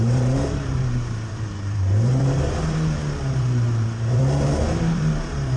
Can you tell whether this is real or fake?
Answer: fake